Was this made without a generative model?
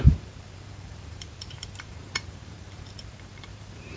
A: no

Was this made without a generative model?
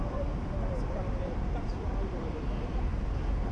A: no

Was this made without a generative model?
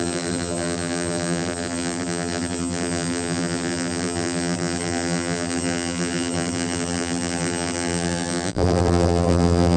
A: no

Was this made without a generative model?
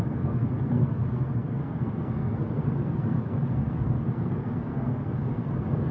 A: no